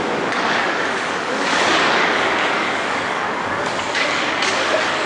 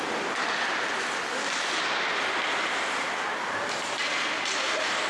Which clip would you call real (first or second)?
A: second